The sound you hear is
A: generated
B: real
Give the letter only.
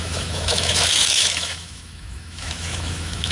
A